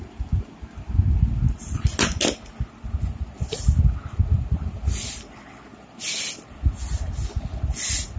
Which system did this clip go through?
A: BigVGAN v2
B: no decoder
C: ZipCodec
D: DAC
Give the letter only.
B